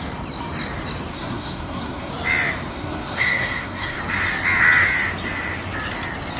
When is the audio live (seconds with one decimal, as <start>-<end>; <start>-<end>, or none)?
0.0-1.1; 2.1-2.7; 4.0-6.4